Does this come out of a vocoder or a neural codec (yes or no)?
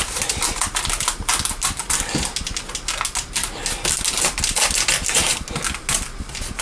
no